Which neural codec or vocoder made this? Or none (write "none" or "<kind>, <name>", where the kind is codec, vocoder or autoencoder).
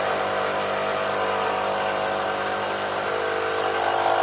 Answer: none